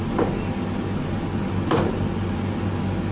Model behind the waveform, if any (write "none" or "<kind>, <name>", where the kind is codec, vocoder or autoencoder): none